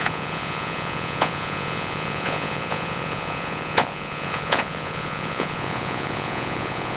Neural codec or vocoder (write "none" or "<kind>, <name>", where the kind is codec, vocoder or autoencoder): vocoder, Vocos